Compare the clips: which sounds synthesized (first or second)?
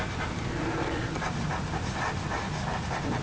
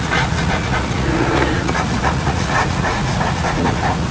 second